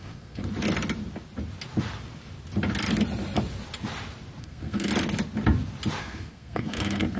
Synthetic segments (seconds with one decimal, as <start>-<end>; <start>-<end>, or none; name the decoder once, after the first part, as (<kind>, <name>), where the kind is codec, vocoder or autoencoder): 0.0-0.4 (codec, SNAC); 4.4-4.9; 6.0-7.2